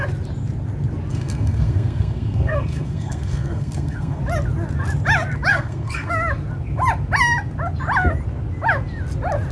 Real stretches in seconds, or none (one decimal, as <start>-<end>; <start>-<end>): 0.0-1.1; 4.2-5.5; 6.1-9.5